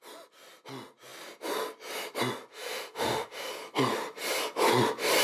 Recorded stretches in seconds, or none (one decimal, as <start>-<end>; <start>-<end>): 0.0-2.5; 3.5-5.2